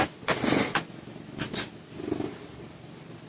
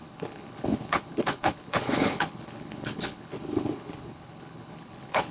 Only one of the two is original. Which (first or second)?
first